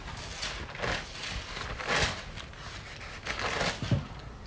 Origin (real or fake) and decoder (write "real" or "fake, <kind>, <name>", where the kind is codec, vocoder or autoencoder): real